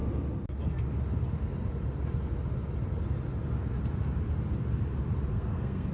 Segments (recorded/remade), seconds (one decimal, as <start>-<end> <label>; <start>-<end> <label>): 0.0-5.3 recorded; 5.3-5.9 remade